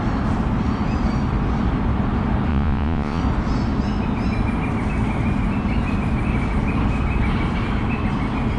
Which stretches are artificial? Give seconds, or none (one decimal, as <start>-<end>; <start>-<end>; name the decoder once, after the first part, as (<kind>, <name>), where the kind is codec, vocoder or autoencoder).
2.5-3.2 (vocoder, Vocos)